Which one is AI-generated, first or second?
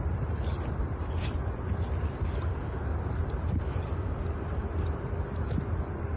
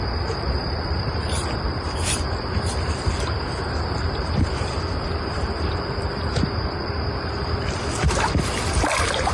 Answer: second